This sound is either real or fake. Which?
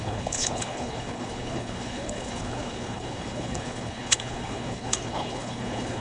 fake